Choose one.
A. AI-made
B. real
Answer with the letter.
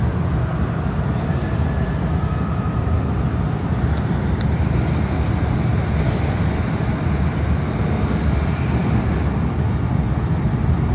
B